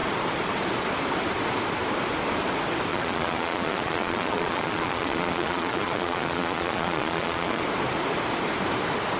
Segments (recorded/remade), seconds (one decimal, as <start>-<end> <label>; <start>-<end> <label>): 0.0-2.9 recorded; 2.9-7.6 remade; 7.6-9.2 recorded